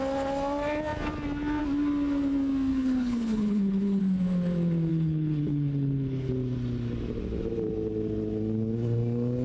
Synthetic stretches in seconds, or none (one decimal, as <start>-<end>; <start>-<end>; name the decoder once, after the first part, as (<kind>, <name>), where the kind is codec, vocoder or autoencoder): 2.7-4.0 (codec, HILCodec); 4.9-6.3